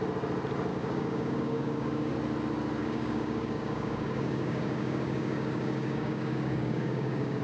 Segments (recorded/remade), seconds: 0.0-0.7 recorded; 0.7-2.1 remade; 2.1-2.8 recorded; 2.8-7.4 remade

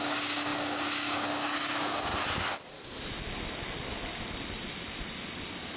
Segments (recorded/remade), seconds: 0.0-2.1 remade; 2.1-5.8 recorded

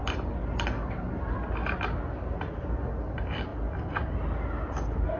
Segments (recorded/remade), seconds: 0.0-5.2 recorded

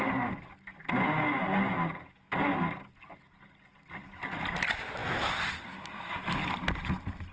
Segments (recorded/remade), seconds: 0.0-7.3 recorded